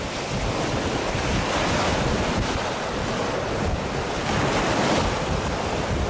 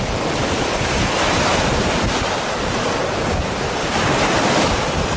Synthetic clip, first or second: second